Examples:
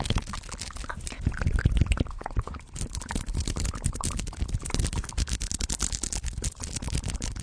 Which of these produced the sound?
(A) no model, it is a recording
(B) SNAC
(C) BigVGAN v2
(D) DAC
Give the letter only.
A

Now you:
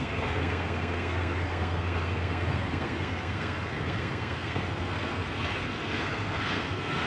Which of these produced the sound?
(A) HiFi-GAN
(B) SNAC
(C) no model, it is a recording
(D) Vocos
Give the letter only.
B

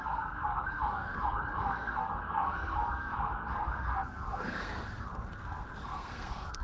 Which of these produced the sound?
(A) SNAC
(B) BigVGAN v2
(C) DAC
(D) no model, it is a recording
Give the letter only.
A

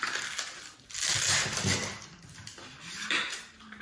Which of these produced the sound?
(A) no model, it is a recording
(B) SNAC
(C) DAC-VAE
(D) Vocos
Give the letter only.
A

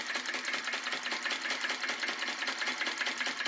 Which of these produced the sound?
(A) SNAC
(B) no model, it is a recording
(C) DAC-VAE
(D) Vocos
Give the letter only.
B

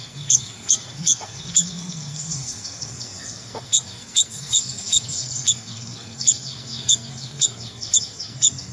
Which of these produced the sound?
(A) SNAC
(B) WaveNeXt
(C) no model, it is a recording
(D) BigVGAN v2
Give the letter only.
A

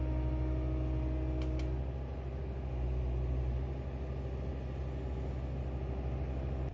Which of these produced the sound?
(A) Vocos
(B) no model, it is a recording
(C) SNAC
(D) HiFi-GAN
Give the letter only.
B